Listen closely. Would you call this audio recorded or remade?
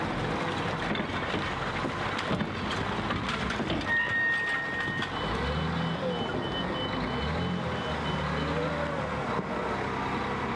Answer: recorded